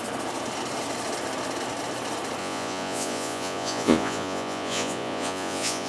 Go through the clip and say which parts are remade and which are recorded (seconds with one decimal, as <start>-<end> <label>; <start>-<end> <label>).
0.0-2.4 recorded; 2.4-5.9 remade